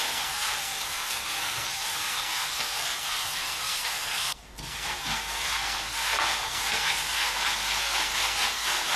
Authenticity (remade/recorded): remade